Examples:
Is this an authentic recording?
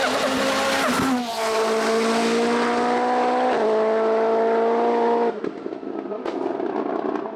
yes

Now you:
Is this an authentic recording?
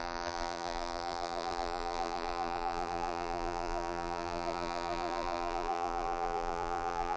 no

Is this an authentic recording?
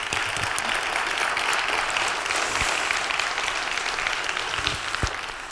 yes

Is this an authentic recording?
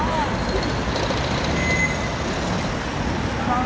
yes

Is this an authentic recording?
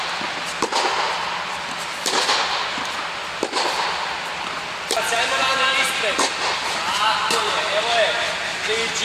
yes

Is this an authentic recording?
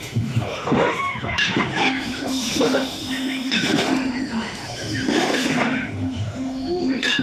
no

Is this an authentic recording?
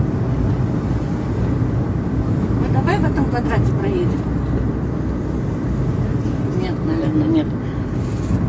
yes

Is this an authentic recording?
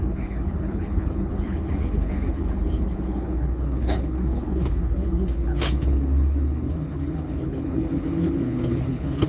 no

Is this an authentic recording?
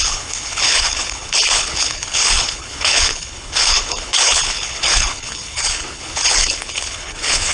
no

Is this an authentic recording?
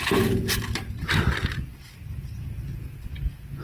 yes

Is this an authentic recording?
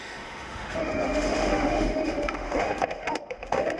no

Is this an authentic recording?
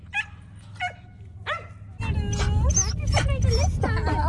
yes